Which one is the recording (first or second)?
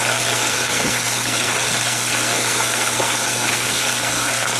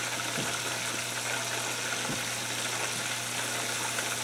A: second